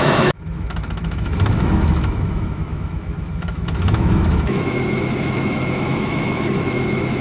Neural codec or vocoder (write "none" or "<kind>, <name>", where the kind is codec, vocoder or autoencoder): autoencoder, DAC-VAE